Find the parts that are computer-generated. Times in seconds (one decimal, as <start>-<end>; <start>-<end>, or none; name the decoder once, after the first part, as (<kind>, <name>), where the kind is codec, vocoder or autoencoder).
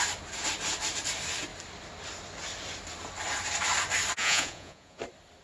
4.2-5.0 (vocoder, Vocos)